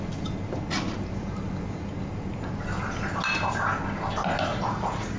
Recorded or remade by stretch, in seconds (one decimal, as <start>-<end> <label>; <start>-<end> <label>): 0.0-4.5 recorded; 4.5-5.2 remade